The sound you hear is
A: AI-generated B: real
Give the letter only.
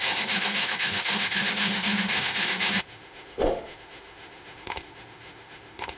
A